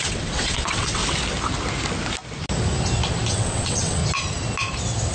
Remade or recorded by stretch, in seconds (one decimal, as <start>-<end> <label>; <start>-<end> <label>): 0.0-1.0 remade; 1.0-3.3 recorded; 3.3-4.0 remade; 4.0-5.1 recorded